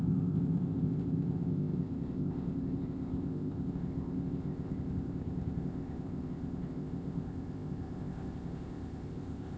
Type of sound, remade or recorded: remade